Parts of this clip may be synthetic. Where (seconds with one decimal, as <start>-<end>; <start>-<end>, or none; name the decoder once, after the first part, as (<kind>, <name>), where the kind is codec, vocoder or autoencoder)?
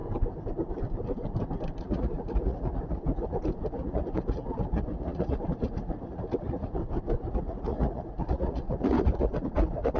1.8-6.8 (vocoder, Vocos); 7.3-10.0